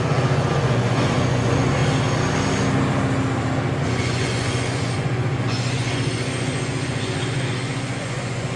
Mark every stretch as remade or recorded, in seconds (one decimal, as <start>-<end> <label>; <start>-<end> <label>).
0.0-1.8 remade; 1.8-3.8 recorded; 3.8-8.6 remade